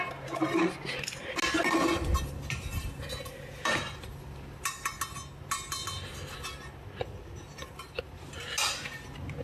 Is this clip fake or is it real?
real